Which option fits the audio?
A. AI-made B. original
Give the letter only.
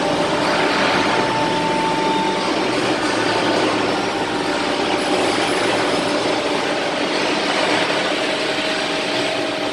B